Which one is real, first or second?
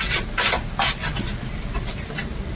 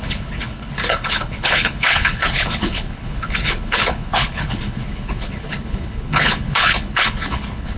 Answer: first